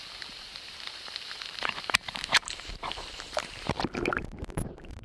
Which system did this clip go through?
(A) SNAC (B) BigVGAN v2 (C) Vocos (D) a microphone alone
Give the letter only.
B